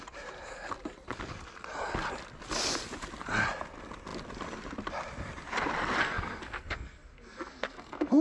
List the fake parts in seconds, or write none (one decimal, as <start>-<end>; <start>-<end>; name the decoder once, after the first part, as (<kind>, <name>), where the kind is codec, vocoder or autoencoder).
6.0-8.2 (codec, SNAC)